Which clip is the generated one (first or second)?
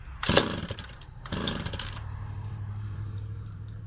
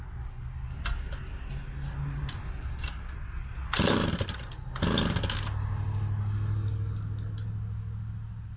first